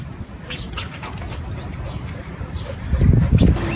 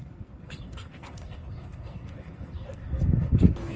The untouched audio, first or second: first